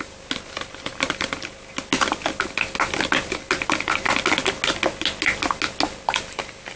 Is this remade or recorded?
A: recorded